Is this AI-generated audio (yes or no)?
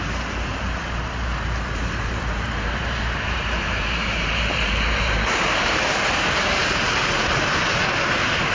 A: yes